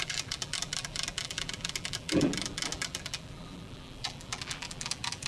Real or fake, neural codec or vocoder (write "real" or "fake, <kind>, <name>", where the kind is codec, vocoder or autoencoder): fake, vocoder, BigVGAN v2